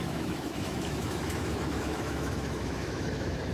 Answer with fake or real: fake